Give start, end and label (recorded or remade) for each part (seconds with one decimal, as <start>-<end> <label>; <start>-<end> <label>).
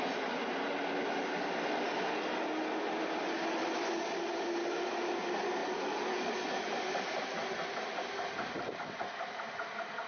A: 0.0-10.1 recorded